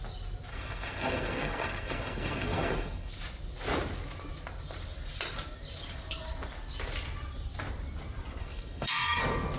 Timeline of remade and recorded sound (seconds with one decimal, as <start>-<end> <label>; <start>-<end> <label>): 0.0-0.5 recorded; 0.5-3.1 remade; 3.1-8.4 recorded; 8.4-9.2 remade; 9.2-9.6 recorded